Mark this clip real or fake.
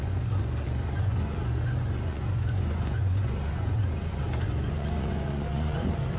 fake